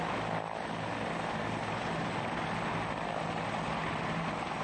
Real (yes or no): yes